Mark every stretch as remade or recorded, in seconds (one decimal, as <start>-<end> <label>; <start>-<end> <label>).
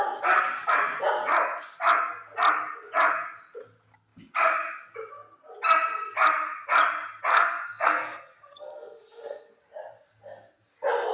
0.0-7.3 recorded; 7.3-9.5 remade; 9.5-11.1 recorded